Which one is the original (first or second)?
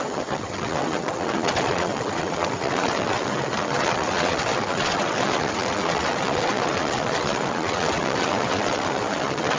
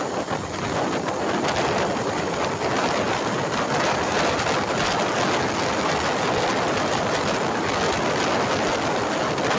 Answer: second